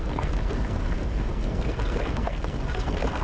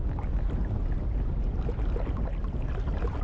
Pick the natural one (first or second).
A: second